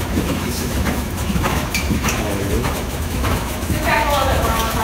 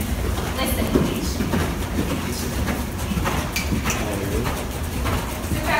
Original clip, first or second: second